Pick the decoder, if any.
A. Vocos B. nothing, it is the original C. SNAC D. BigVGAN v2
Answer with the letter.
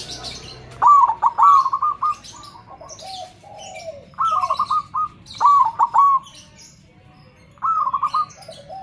B